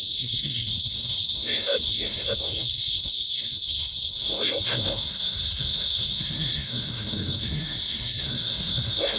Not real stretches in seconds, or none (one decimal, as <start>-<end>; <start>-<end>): 0.0-9.2